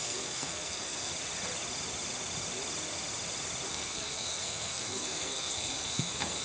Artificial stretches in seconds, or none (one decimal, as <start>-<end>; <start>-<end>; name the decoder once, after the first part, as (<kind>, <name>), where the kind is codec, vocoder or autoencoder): 0.0-1.1 (codec, SNAC); 3.7-6.4